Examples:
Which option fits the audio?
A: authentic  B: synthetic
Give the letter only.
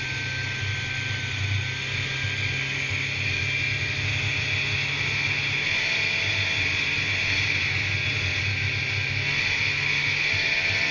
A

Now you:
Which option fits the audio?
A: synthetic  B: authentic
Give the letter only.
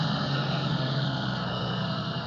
A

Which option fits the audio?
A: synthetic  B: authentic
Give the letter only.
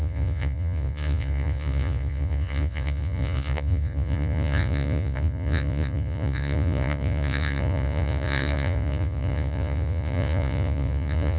A